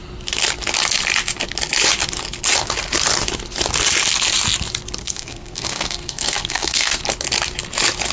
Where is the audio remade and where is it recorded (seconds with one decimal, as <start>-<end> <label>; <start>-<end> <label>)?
0.0-5.0 recorded; 5.0-7.0 remade; 7.0-8.1 recorded